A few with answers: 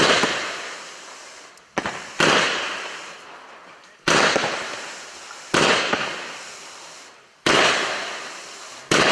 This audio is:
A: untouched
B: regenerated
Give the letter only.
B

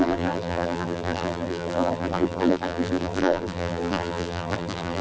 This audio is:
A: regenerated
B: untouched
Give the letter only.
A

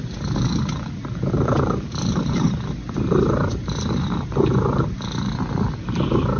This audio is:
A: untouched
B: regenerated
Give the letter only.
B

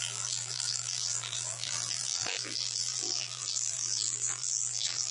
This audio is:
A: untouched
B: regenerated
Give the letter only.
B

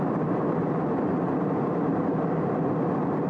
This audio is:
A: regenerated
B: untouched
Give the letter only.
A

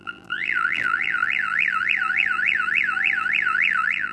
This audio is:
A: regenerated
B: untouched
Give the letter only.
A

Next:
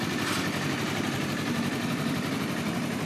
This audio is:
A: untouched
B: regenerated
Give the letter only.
A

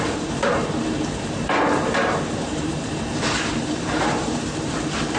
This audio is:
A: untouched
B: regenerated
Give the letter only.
B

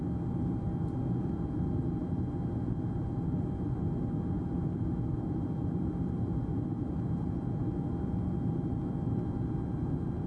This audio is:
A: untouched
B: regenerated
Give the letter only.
A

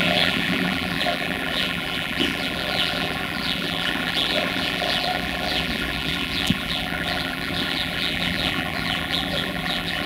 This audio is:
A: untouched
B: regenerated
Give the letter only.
B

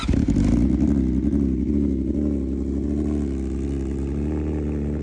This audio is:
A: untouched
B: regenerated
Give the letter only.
A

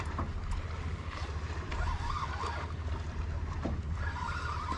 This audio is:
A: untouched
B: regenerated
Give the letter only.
B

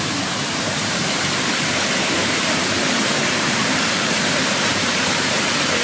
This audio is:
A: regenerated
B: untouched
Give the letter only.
A